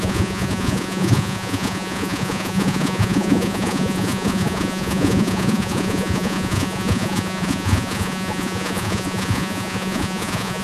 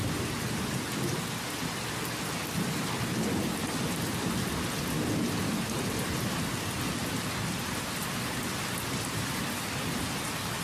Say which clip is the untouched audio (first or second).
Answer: second